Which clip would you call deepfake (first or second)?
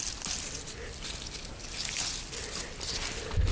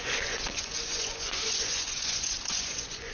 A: second